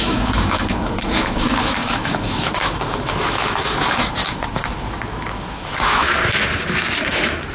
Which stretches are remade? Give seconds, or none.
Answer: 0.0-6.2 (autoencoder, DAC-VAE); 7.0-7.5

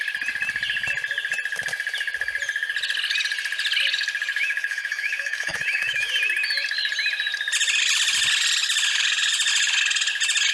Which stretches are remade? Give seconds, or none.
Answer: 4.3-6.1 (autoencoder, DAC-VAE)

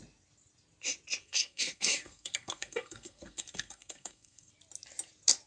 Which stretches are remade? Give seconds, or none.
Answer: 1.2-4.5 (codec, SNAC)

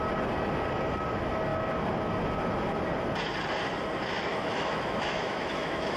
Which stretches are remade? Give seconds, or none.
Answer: 4.3-6.0 (autoencoder, DAC-VAE)

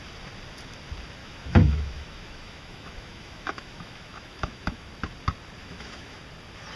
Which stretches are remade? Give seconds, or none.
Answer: 1.2-4.9 (autoencoder, DAC-VAE); 5.6-6.2

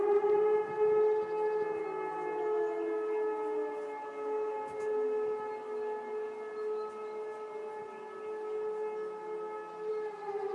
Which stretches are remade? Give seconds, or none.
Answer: none

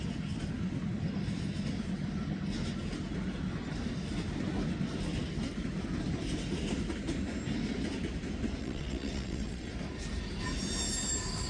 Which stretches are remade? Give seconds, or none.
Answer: 8.6-9.7 (vocoder, WaveNeXt)

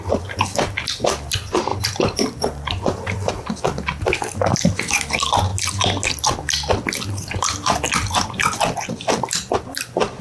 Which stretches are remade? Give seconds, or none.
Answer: 1.7-3.3 (vocoder, BigVGAN v2)